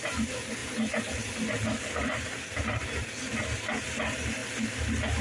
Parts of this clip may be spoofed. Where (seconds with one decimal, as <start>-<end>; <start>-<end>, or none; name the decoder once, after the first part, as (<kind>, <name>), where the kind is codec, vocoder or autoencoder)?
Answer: none